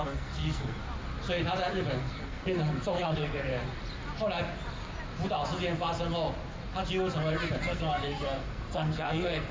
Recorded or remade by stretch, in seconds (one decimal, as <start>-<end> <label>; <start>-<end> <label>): 0.0-0.8 remade; 0.8-2.0 recorded; 2.0-3.5 remade; 3.5-7.6 recorded; 7.6-9.5 remade